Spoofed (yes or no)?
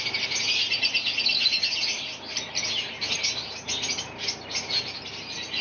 no